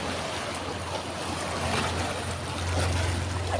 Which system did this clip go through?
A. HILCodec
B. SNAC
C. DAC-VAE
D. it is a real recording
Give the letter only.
D